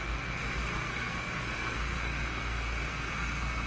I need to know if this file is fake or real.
fake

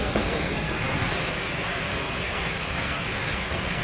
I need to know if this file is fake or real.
fake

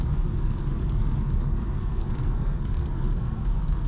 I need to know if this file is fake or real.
fake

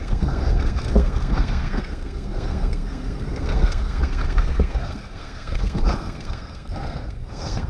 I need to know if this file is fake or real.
fake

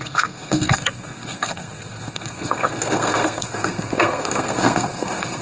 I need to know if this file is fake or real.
fake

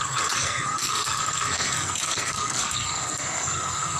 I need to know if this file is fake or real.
fake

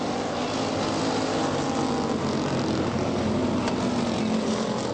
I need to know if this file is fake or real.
real